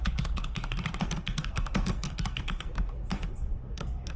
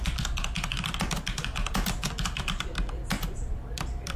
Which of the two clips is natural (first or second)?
second